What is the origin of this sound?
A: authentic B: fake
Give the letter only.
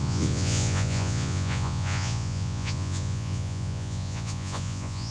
B